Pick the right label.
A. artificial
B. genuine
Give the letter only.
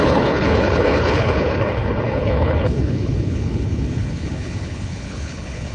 A